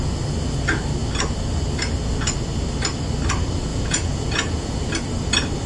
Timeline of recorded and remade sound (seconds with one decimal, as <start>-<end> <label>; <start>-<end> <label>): 0.0-3.7 recorded; 3.7-4.9 remade; 4.9-5.7 recorded